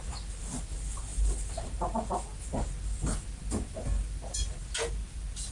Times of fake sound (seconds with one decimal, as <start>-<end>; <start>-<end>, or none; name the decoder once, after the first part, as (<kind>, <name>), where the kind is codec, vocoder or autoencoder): none